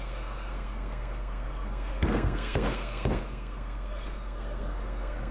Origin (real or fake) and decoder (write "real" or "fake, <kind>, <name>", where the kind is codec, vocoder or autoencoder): fake, codec, SNAC